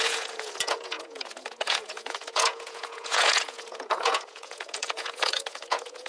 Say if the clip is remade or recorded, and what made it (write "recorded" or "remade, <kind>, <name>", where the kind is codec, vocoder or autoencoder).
remade, vocoder, Vocos